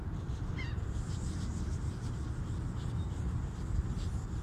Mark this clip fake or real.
real